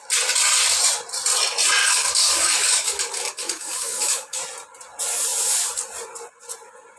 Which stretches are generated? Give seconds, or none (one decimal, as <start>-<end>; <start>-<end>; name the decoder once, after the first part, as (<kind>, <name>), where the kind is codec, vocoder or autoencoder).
1.8-4.4 (codec, DAC)

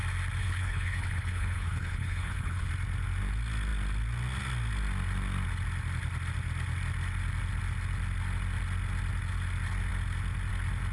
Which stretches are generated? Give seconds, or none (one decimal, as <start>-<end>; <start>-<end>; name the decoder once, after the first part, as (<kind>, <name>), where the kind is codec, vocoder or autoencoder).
0.4-2.7 (codec, HILCodec)

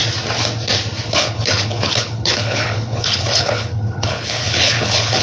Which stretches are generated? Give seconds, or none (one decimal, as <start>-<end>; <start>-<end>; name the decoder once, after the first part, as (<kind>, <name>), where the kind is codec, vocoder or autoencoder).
1.0-5.2 (codec, HILCodec)

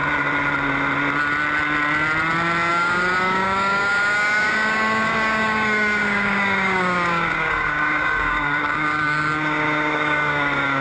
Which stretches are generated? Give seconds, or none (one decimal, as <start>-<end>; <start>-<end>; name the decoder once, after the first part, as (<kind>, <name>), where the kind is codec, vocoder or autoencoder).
2.7-10.8 (codec, DAC)

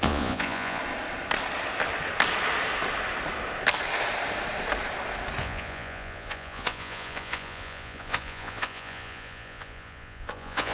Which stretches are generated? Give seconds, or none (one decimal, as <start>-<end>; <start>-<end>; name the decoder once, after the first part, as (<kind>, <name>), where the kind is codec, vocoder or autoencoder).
0.0-0.8 (vocoder, Vocos); 5.4-10.7

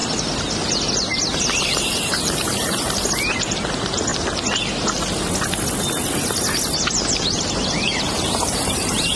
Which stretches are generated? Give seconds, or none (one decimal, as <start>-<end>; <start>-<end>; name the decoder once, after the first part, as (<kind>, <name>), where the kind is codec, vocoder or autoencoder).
1.6-4.1 (vocoder, BigVGAN v2); 7.0-9.2

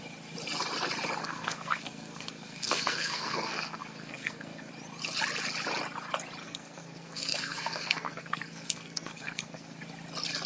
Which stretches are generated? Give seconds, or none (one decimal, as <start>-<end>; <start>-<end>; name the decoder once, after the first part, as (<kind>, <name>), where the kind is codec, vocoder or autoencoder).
1.2-4.7 (codec, SNAC); 6.4-9.8